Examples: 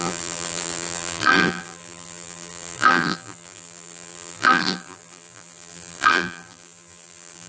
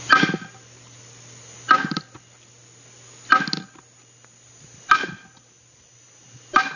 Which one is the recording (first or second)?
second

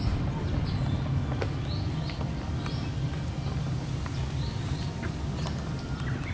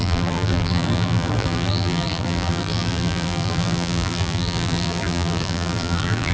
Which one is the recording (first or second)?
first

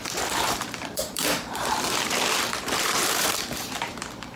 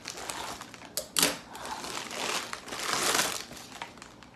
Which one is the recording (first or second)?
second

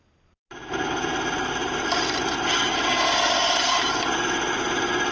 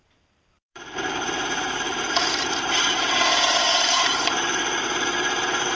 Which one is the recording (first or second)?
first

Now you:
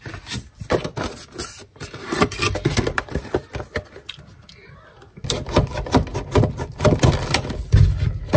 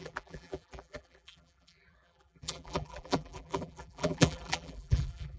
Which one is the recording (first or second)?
first